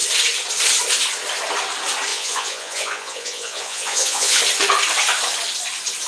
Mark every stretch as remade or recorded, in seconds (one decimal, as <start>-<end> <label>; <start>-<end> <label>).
0.0-2.1 recorded; 2.1-4.4 remade; 4.4-6.1 recorded